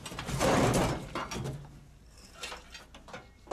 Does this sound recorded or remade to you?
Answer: recorded